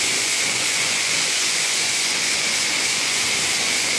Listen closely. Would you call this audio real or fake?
fake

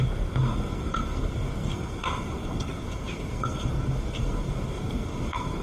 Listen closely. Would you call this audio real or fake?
fake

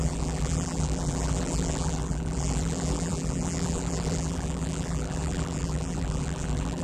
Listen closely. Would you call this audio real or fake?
fake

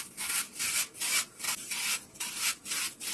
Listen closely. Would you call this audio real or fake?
real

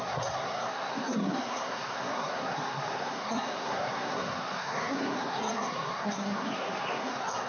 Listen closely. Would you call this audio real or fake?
fake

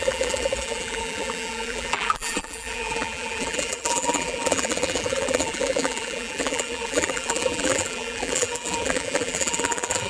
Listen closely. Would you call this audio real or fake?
fake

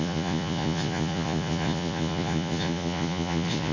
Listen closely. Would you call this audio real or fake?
fake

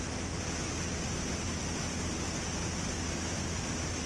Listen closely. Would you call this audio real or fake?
real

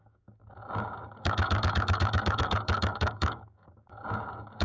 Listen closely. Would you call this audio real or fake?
fake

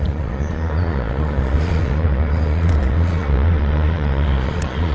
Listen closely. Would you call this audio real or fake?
fake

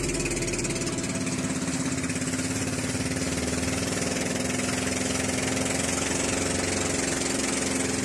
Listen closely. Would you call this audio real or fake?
real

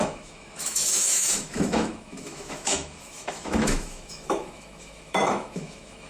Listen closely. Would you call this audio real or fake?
fake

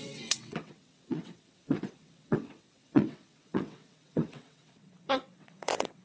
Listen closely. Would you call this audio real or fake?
fake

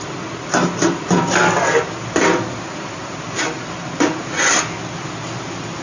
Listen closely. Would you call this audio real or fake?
real